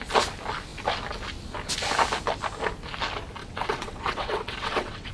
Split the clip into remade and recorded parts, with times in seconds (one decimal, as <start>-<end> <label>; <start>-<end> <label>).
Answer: 0.0-3.4 recorded; 3.4-5.1 remade